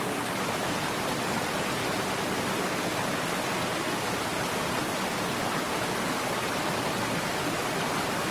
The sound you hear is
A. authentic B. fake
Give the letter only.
A